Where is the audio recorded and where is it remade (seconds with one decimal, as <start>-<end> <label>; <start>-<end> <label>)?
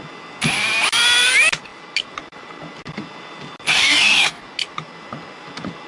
0.0-3.7 recorded; 3.7-4.4 remade; 4.4-5.9 recorded